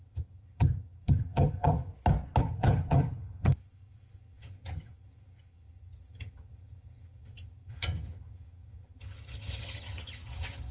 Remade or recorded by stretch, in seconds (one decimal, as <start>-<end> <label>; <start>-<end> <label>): 0.0-1.9 remade; 1.9-2.4 recorded; 2.4-10.7 remade